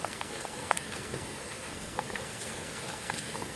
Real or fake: fake